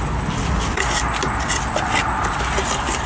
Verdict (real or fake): real